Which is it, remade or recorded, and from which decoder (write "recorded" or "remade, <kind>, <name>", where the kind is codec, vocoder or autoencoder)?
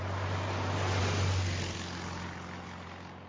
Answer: recorded